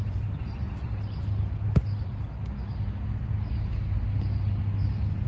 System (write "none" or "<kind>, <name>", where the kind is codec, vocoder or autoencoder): none